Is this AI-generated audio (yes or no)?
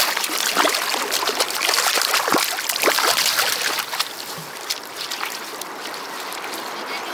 no